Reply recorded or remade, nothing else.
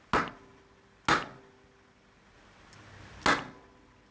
recorded